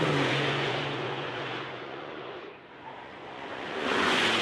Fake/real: fake